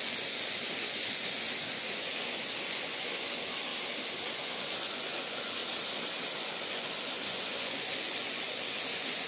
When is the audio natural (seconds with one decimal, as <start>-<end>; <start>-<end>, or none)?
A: 3.7-4.3; 5.6-6.4